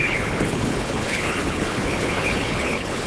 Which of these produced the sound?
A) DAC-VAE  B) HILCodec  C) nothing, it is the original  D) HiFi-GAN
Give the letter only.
B